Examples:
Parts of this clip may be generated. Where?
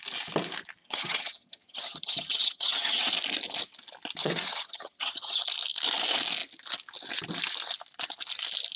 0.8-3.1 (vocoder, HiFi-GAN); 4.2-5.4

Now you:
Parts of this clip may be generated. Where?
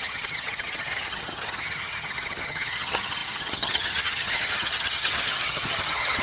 0.0-6.2 (vocoder, HiFi-GAN)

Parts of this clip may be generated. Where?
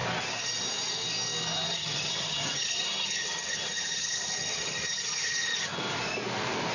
1.8-5.8 (vocoder, HiFi-GAN)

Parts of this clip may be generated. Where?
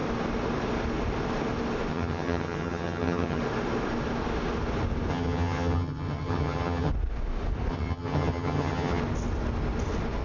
1.9-3.4 (vocoder, HiFi-GAN); 5.1-6.9; 7.7-9.0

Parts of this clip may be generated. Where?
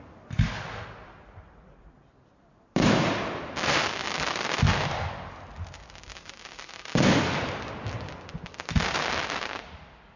none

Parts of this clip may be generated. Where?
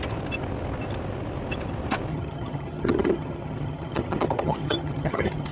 2.1-5.5 (vocoder, HiFi-GAN)